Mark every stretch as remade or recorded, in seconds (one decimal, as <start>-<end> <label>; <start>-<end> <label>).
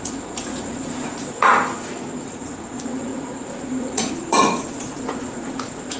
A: 0.0-1.5 remade; 1.5-2.2 recorded; 2.2-6.0 remade